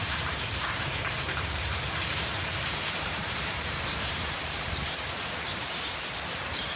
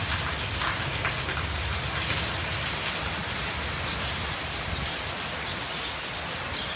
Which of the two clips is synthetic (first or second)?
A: first